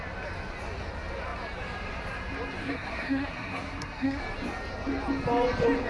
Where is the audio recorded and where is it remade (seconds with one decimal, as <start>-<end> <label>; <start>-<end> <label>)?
0.0-2.6 recorded; 2.6-4.2 remade; 4.2-5.9 recorded